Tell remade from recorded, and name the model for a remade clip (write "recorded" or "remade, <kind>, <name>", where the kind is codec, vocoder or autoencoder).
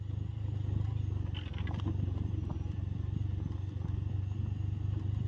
recorded